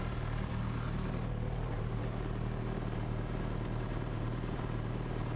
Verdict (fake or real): fake